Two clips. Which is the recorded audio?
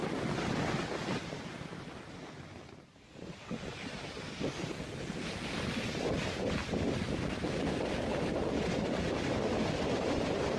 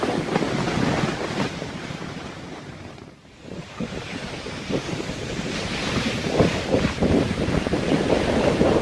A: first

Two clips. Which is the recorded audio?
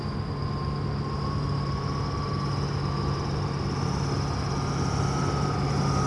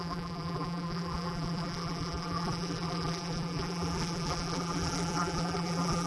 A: first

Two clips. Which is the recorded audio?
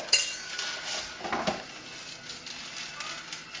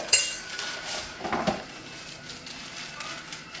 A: first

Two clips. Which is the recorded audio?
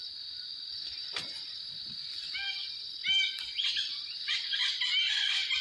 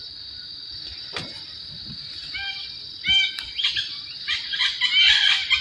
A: second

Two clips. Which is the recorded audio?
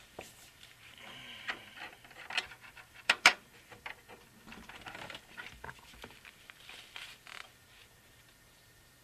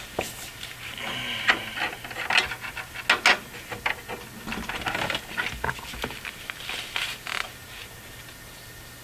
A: second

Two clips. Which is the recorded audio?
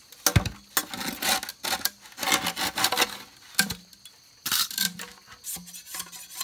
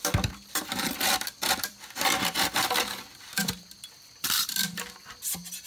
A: first